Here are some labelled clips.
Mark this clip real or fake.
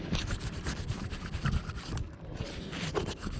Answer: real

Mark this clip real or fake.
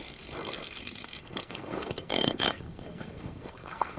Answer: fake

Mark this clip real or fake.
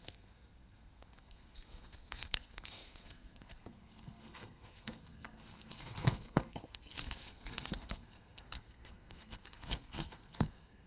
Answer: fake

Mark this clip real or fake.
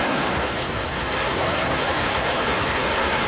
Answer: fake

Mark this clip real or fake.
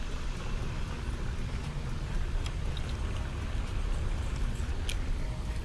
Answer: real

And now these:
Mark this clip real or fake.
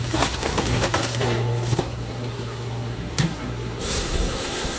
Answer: fake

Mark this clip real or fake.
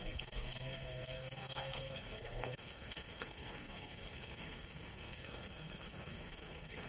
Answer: fake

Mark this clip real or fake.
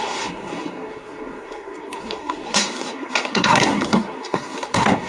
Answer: fake